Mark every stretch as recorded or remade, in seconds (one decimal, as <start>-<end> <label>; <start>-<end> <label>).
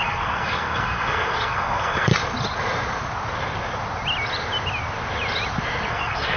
0.0-2.1 remade; 2.1-5.9 recorded; 5.9-6.4 remade